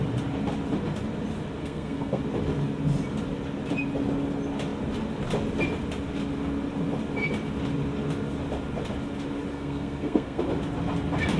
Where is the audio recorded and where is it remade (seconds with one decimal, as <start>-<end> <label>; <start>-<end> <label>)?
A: 0.0-1.6 recorded; 1.6-2.2 remade; 2.2-9.5 recorded; 9.5-10.4 remade; 10.4-11.4 recorded

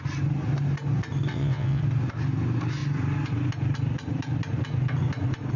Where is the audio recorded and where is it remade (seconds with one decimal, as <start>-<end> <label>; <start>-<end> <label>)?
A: 0.0-1.3 recorded; 1.3-1.8 remade; 1.8-5.6 recorded

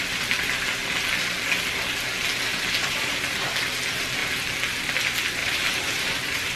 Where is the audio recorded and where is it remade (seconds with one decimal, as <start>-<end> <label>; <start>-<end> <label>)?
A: 0.0-2.5 recorded; 2.5-3.4 remade; 3.4-5.4 recorded; 5.4-6.6 remade

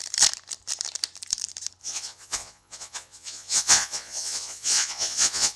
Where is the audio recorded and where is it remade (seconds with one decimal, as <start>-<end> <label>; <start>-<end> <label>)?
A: 0.0-1.8 recorded; 1.8-5.6 remade